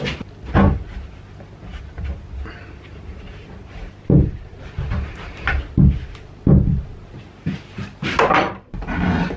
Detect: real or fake real